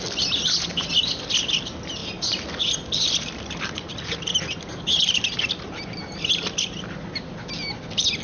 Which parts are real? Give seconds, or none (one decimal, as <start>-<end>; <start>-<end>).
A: 0.0-8.2

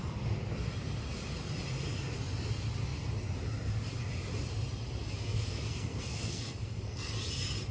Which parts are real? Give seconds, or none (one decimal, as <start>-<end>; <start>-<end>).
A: 0.0-5.2; 7.1-7.7

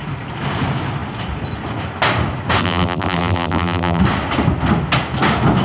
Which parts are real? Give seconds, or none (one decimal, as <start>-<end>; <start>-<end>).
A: 0.0-2.6; 4.0-5.6

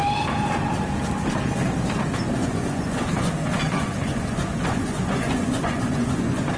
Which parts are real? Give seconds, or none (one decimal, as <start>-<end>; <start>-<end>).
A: 0.0-2.4

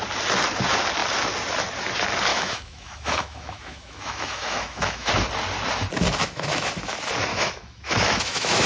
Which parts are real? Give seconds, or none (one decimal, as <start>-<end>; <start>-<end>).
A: 0.0-2.3; 5.1-6.2; 6.7-7.3

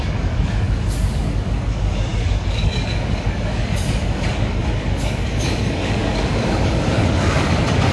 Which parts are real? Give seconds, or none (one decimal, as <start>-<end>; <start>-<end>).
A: none

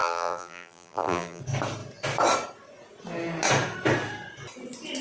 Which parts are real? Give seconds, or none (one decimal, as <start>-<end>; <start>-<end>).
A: 1.4-5.0